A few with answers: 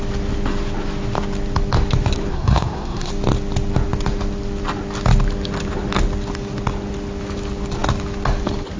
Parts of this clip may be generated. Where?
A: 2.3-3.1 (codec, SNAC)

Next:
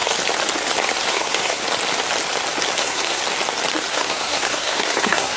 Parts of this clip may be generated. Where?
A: 1.1-1.6 (codec, SNAC); 2.8-3.2; 3.9-5.4